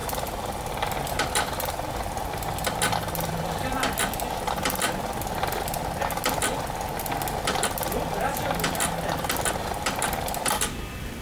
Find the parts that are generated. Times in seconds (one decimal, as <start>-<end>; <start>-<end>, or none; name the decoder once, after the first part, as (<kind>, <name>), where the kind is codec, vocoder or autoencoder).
none

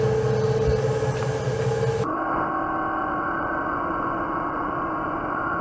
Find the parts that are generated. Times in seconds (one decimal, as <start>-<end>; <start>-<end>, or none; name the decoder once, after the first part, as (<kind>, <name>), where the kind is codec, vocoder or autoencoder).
3.0-5.6 (vocoder, Vocos)